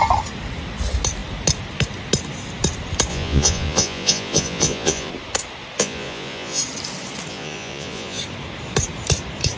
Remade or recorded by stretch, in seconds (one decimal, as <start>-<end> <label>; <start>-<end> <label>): 0.0-3.1 recorded; 3.1-5.1 remade; 5.1-5.8 recorded; 5.8-6.6 remade; 6.6-7.3 recorded; 7.3-8.2 remade; 8.2-9.6 recorded